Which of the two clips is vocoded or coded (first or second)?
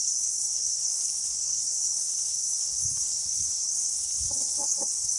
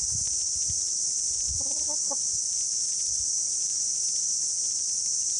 first